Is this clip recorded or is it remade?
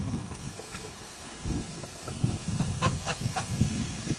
remade